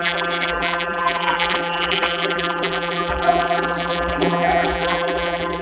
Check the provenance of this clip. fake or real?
fake